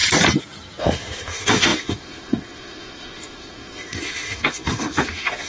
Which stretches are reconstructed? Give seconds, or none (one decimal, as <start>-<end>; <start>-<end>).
0.8-5.5